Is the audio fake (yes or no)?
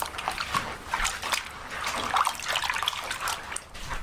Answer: no